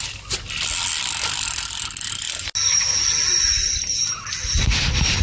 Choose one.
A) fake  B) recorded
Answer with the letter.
B